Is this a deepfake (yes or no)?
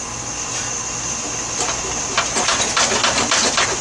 no